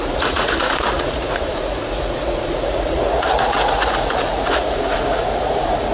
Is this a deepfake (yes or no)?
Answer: yes